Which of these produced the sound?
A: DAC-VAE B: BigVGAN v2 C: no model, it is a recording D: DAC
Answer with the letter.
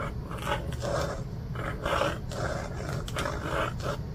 C